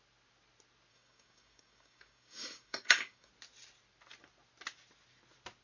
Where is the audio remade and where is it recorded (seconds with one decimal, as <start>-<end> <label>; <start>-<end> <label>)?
0.0-0.9 recorded; 0.9-3.3 remade; 3.3-5.6 recorded